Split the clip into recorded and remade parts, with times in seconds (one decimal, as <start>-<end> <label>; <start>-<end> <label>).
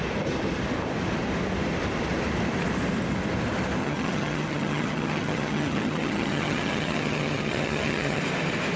0.0-3.8 recorded; 3.8-8.2 remade; 8.2-8.8 recorded